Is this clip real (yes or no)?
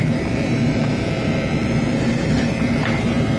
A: no